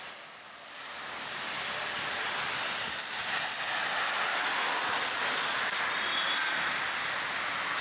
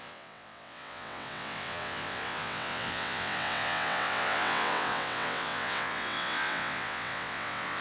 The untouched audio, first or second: first